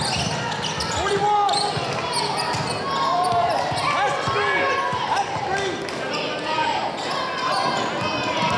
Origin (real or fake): real